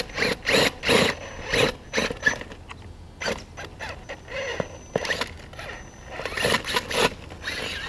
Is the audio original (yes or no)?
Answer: yes